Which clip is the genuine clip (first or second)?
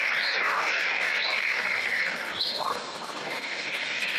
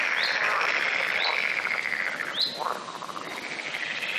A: second